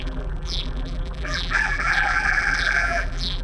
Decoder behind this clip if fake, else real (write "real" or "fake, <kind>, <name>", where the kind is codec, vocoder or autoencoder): fake, vocoder, BigVGAN v2